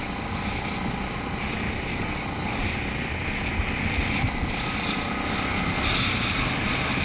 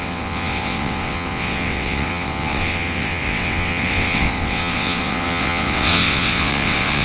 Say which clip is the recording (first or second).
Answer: first